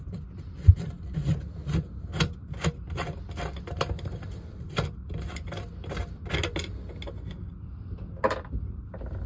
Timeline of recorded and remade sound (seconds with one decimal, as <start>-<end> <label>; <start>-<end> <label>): 0.0-1.3 remade; 1.3-3.6 recorded; 3.6-6.0 remade; 6.0-8.2 recorded; 8.2-9.3 remade